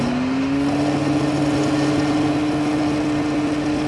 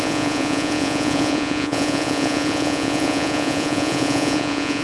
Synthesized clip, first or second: second